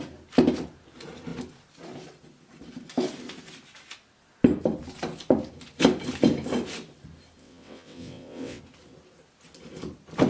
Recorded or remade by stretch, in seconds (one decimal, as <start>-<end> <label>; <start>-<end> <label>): 0.0-7.4 recorded; 7.4-8.6 remade; 8.6-10.3 recorded